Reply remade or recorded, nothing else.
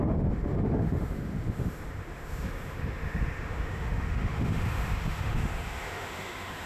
remade